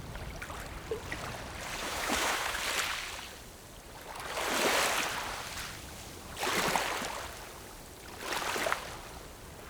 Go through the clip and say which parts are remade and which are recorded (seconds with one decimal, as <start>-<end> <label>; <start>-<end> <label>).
0.0-1.8 recorded; 1.8-2.6 remade; 2.6-9.7 recorded

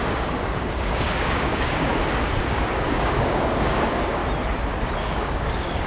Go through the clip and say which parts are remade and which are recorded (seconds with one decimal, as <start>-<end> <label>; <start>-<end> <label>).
0.0-1.9 remade; 1.9-2.5 recorded; 2.5-4.2 remade; 4.2-5.0 recorded; 5.0-5.9 remade

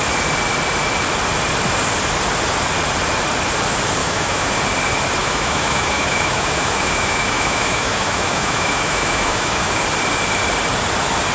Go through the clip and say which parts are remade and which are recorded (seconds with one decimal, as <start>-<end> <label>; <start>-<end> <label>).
0.0-4.0 recorded; 4.0-4.5 remade; 4.5-5.2 recorded; 5.2-9.8 remade; 9.8-11.3 recorded